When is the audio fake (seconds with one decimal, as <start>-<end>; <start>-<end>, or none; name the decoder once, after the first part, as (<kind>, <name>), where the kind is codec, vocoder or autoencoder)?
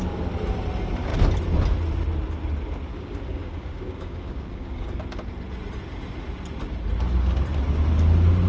2.9-5.0 (codec, DAC)